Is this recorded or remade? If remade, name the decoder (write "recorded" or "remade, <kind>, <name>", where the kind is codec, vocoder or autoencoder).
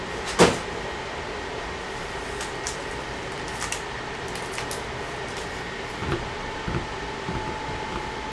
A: remade, vocoder, BigVGAN v2